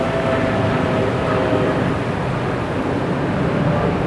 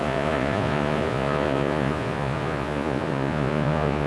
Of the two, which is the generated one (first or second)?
second